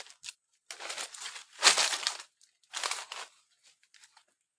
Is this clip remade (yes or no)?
no